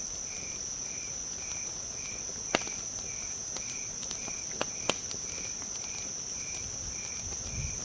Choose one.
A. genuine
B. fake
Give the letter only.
A